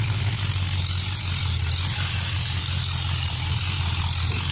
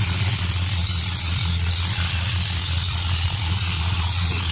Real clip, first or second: first